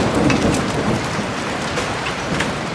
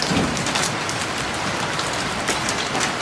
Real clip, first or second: second